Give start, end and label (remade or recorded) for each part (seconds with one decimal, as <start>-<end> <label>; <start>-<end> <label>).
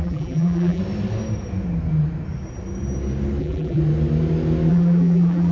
0.0-0.8 remade; 0.8-3.4 recorded; 3.4-3.8 remade; 3.8-4.7 recorded; 4.7-5.5 remade